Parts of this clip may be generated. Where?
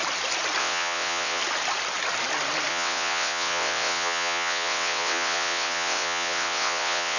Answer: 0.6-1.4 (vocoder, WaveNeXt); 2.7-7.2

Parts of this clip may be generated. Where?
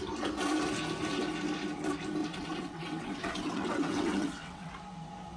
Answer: 2.2-4.7 (vocoder, WaveNeXt)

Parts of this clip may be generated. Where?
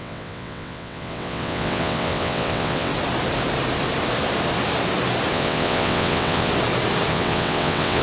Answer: 0.0-2.9 (vocoder, WaveNeXt); 5.3-6.5; 7.1-8.0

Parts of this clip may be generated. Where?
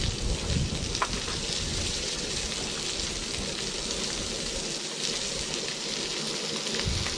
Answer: 1.7-2.3 (vocoder, WaveNeXt)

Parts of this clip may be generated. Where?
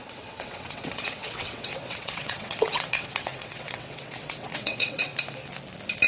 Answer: 0.0-5.1 (vocoder, WaveNeXt)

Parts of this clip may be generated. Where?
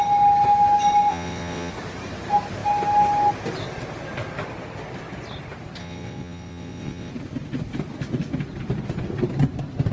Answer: 1.1-1.7 (vocoder, WaveNeXt); 5.8-7.1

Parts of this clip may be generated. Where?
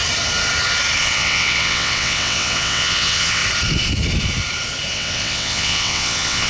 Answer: 1.0-3.4 (vocoder, WaveNeXt); 4.9-6.5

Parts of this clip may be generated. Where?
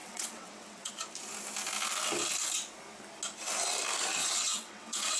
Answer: 0.0-0.9 (vocoder, WaveNeXt); 4.2-5.2